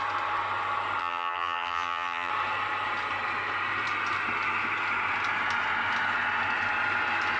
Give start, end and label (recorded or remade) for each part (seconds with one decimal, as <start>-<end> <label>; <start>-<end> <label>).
0.0-1.0 recorded; 1.0-2.3 remade; 2.3-7.4 recorded